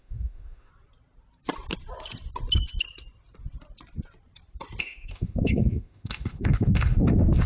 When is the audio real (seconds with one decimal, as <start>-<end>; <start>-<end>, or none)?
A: 0.7-4.8